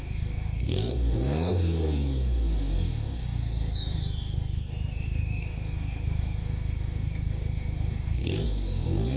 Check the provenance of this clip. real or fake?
fake